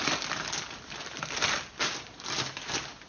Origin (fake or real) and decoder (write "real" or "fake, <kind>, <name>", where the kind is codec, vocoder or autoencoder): real